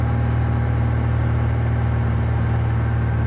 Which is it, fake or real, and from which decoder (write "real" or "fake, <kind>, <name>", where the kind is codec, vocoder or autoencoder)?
real